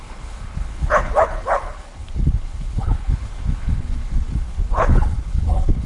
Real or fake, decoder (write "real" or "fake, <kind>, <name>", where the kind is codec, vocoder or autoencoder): fake, codec, HILCodec